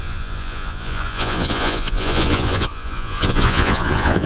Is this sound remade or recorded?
remade